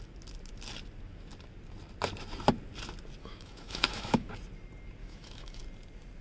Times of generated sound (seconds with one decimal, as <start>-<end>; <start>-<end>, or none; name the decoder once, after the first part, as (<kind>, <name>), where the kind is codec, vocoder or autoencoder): 3.2-4.3 (autoencoder, DAC-VAE); 5.0-5.6